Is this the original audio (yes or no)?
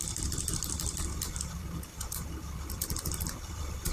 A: no